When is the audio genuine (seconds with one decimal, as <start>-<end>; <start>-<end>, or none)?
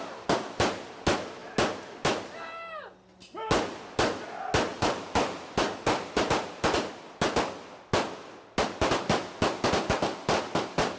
0.0-4.7; 6.9-11.0